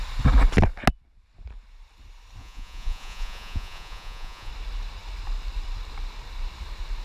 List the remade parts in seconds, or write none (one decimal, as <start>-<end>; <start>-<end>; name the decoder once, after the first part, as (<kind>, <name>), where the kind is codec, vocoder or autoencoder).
2.4-4.5 (vocoder, Vocos)